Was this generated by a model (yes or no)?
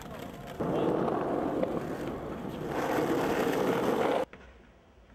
no